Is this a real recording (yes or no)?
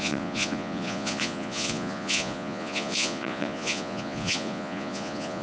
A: no